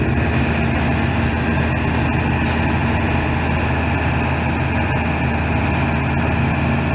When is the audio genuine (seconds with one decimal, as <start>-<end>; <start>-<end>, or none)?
0.0-6.9